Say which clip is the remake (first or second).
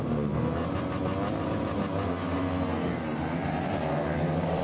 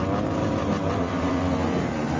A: second